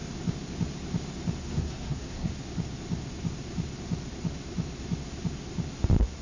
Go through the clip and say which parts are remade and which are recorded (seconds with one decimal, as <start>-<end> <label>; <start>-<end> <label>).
0.0-1.4 recorded; 1.4-2.3 remade; 2.3-6.2 recorded